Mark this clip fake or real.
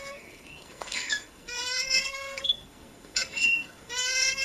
fake